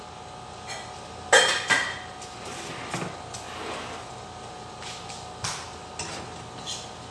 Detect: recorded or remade recorded